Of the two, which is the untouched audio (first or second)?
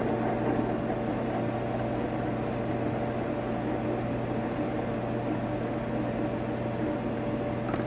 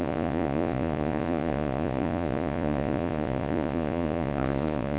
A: first